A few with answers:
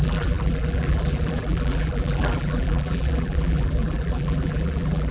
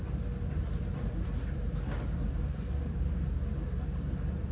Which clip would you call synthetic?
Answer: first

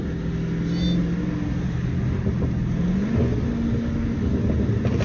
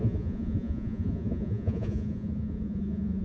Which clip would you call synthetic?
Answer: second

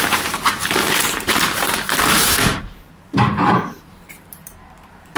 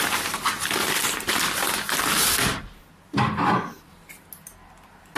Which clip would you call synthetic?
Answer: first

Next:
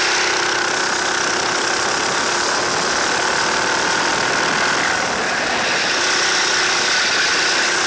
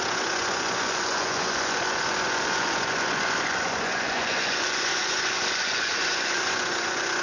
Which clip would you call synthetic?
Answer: second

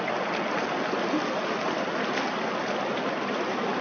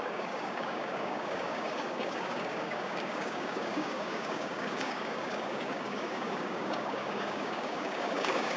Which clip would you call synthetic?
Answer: second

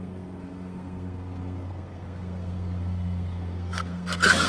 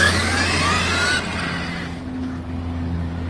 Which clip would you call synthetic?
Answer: first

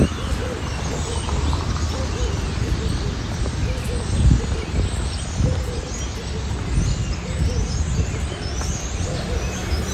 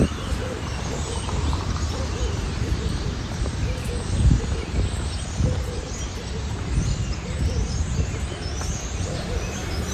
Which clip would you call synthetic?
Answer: second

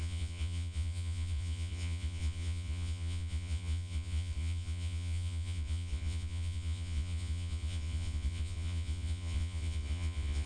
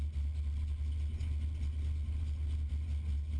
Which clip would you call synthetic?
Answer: first